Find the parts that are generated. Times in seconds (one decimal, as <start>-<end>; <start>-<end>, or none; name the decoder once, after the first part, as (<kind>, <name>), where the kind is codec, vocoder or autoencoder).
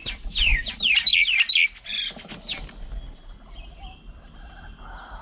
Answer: none